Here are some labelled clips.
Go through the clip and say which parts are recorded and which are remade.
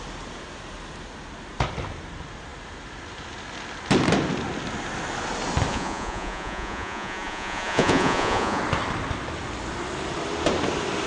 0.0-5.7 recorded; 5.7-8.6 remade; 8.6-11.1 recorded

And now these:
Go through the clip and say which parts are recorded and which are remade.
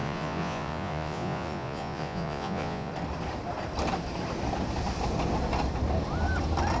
0.0-2.9 remade; 2.9-6.8 recorded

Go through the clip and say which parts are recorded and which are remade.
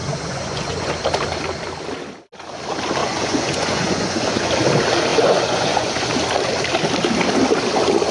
0.0-0.9 remade; 0.9-3.0 recorded; 3.0-4.5 remade; 4.5-5.1 recorded; 5.1-6.1 remade; 6.1-8.1 recorded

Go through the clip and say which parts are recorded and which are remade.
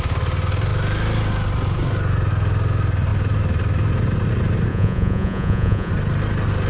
0.0-4.7 recorded; 4.7-5.9 remade; 5.9-6.7 recorded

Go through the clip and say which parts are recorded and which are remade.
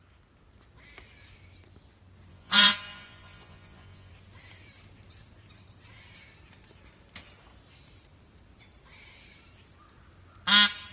0.0-2.3 recorded; 2.3-4.1 remade; 4.1-10.9 recorded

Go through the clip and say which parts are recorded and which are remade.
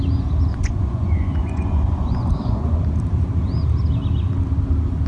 0.0-0.5 recorded; 0.5-2.8 remade; 2.8-5.1 recorded